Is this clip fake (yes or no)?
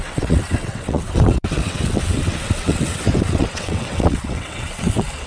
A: yes